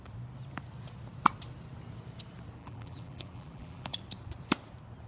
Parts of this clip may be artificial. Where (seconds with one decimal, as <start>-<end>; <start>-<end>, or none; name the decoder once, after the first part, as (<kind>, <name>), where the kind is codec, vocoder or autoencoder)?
2.6-4.0 (vocoder, BigVGAN v2)